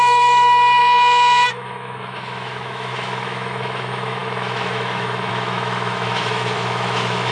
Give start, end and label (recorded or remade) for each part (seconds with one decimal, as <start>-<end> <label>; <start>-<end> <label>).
0.0-0.8 remade; 0.8-1.5 recorded; 1.5-7.3 remade